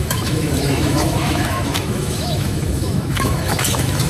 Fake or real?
fake